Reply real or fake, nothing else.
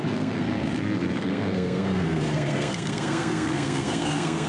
fake